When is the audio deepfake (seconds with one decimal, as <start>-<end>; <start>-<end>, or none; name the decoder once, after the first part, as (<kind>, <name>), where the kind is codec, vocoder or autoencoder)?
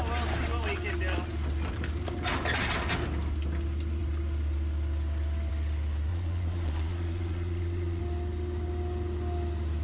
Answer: 6.1-8.0 (vocoder, Vocos)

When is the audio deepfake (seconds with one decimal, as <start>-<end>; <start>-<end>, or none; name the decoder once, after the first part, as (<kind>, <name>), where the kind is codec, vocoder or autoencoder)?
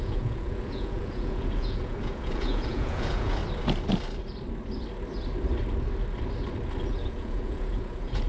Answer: 0.0-3.4 (vocoder, Vocos); 6.9-8.3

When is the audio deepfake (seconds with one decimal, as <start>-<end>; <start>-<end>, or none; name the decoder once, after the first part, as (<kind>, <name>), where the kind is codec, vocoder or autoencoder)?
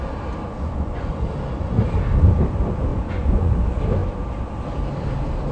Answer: 0.4-1.2 (vocoder, Vocos); 2.9-3.5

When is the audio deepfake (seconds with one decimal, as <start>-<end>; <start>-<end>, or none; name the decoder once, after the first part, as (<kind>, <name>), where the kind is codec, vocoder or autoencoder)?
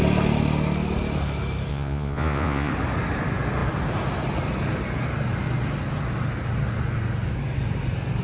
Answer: 1.7-2.7 (vocoder, Vocos)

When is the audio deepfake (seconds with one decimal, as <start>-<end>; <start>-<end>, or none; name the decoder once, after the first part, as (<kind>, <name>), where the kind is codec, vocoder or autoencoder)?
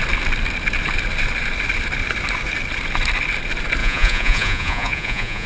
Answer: 3.8-5.5 (vocoder, Vocos)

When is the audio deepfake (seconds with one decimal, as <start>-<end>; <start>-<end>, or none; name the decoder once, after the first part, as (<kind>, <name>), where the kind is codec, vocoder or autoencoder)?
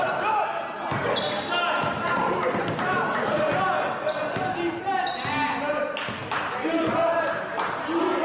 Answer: none